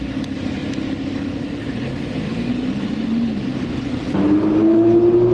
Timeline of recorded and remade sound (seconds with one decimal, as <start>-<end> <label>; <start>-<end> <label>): 0.0-0.6 recorded; 0.6-3.8 remade; 3.8-5.3 recorded